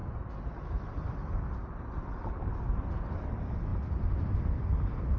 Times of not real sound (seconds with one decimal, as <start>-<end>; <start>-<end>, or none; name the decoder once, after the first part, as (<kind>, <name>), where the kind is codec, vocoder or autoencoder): none